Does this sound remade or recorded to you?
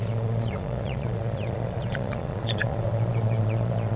remade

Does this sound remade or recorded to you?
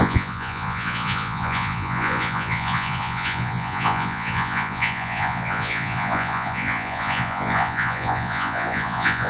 remade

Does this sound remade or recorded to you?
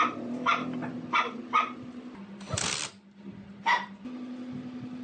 recorded